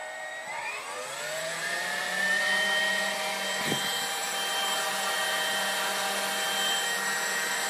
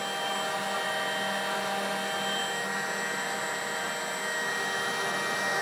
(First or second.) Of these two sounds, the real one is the second